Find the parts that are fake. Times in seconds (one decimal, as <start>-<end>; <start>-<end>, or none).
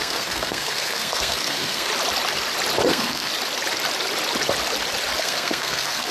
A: 0.0-1.9; 2.9-3.3; 5.2-6.1